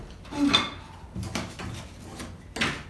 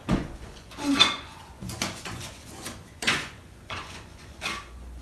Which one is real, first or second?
first